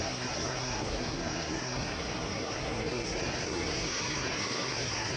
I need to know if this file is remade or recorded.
remade